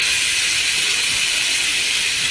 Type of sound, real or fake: real